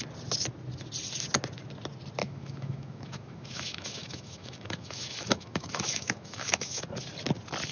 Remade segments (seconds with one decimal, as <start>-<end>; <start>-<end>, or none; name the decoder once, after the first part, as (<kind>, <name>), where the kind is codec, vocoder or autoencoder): 2.2-6.8 (autoencoder, DAC-VAE)